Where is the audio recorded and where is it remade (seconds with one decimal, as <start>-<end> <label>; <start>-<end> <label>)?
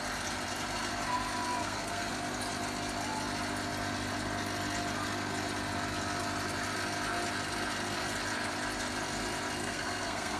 0.0-1.6 recorded; 1.6-2.1 remade; 2.1-9.6 recorded; 9.6-10.4 remade